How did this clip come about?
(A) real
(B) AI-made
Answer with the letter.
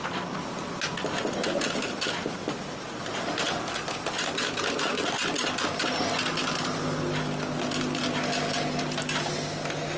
A